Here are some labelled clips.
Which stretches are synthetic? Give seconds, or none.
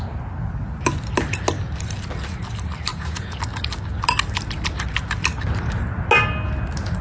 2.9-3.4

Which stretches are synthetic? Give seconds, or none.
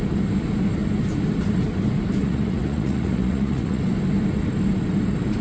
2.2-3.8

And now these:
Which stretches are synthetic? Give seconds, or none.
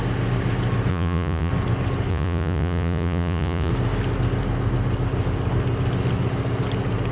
0.9-1.5; 2.1-3.7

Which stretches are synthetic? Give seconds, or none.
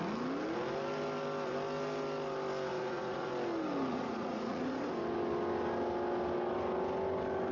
2.7-3.3; 3.9-4.9